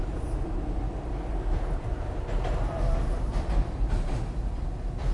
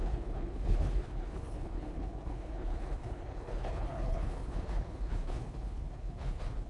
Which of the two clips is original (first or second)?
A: first